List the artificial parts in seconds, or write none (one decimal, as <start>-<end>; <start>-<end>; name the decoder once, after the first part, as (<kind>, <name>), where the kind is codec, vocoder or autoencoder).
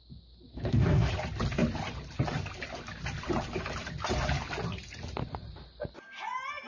0.5-1.1 (codec, SNAC)